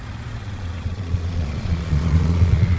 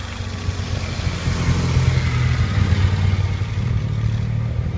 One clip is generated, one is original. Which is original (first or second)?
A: second